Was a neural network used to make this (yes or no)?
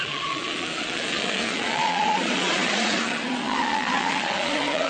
yes